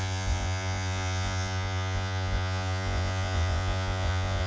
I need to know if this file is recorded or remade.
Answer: remade